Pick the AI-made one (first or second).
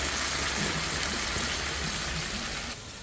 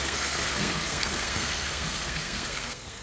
second